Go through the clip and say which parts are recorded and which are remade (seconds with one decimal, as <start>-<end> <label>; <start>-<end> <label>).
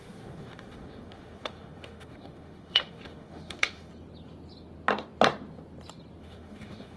0.0-3.9 remade; 3.9-6.2 recorded; 6.2-7.0 remade